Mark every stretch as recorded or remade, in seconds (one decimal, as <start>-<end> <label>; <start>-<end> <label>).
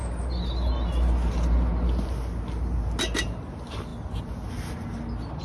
0.0-5.4 recorded